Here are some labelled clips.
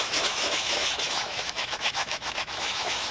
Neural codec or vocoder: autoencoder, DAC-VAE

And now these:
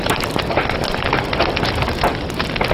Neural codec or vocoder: none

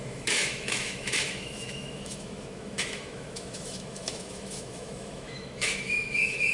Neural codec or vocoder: autoencoder, DAC-VAE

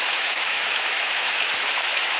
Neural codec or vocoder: autoencoder, DAC-VAE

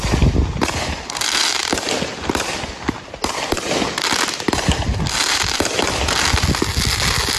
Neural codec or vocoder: none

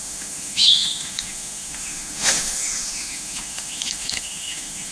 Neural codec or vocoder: autoencoder, DAC-VAE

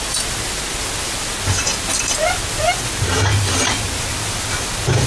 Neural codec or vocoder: none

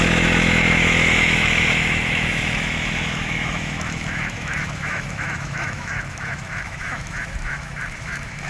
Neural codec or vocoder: autoencoder, DAC-VAE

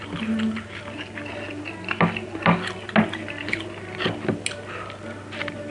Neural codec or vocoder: none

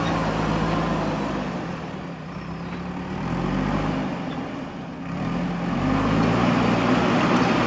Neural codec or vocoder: none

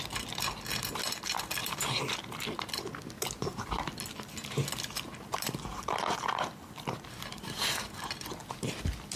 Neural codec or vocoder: none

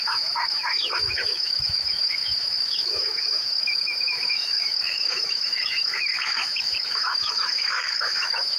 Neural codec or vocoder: autoencoder, DAC-VAE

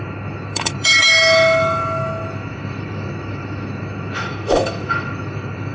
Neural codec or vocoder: autoencoder, DAC-VAE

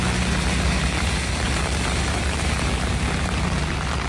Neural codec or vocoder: none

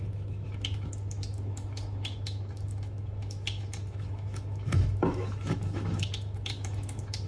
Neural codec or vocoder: autoencoder, DAC-VAE